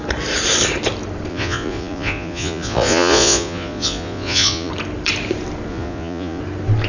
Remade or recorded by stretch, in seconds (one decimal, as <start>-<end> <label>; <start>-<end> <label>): 0.0-1.3 recorded; 1.3-4.7 remade; 4.7-5.7 recorded; 5.7-6.4 remade; 6.4-6.9 recorded